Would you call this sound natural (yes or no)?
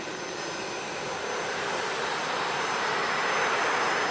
yes